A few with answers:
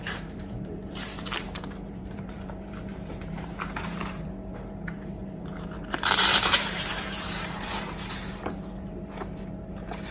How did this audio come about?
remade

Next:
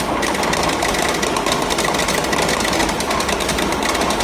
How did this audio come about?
recorded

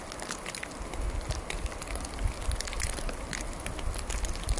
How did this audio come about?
recorded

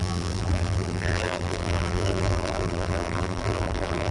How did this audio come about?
remade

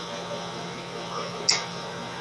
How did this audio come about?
recorded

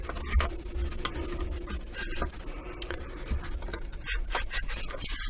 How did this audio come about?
recorded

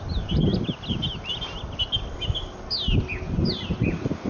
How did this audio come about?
recorded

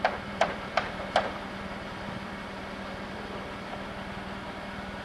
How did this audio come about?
remade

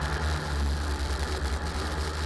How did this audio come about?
recorded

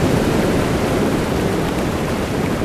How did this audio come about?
remade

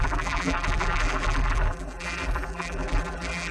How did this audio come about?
remade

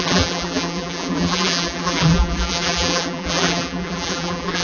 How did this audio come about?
remade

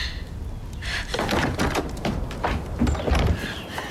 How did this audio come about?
remade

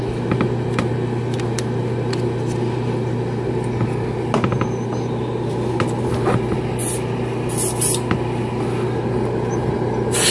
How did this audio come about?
recorded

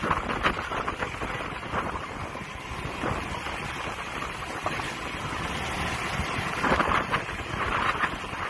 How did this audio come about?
recorded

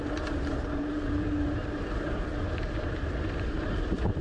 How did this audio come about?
remade